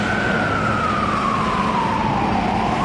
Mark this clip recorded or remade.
recorded